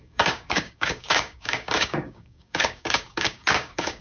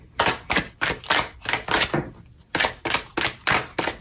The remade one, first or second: first